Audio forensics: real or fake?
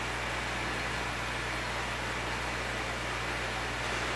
real